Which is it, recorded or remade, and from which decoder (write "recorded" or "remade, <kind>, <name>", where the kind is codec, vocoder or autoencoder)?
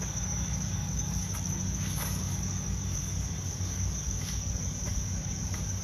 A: remade, codec, DAC